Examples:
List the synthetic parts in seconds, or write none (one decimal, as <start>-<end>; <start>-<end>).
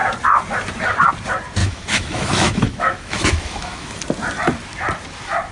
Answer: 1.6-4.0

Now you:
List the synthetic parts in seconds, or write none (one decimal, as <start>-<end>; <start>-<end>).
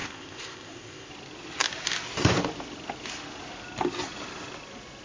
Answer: 0.0-1.1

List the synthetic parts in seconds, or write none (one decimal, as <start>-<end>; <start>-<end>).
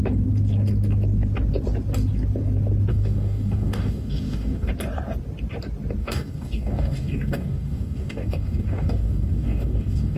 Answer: 2.9-4.7; 6.0-10.2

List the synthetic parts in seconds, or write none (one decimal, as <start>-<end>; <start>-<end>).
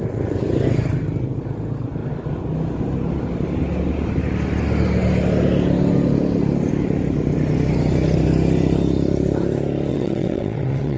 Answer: 9.9-11.0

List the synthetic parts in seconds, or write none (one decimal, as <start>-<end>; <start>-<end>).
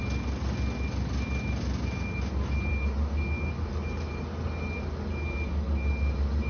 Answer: none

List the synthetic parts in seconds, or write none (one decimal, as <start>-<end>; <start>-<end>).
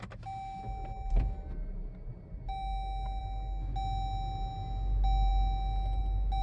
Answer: none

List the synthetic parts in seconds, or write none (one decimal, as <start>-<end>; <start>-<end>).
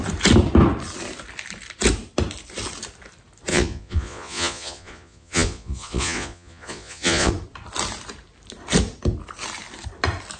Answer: 3.5-7.3